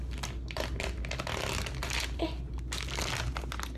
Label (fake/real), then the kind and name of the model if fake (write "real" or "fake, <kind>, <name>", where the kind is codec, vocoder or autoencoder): real